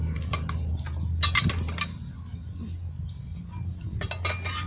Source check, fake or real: real